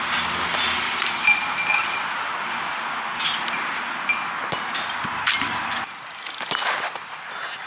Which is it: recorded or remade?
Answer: recorded